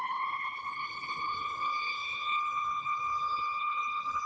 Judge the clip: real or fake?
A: fake